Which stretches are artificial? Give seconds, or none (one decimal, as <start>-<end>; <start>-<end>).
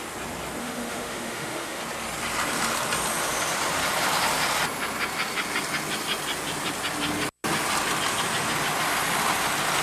0.6-1.8